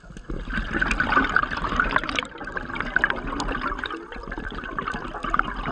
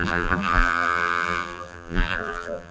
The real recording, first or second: first